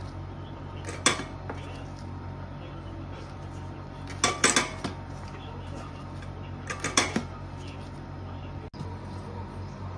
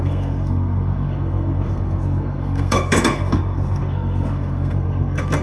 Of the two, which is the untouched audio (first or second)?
first